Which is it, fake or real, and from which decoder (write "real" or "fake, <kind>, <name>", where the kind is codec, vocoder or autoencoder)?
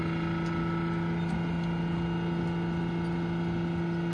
real